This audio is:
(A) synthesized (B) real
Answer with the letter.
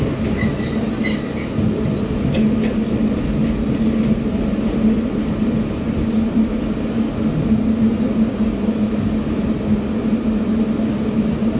B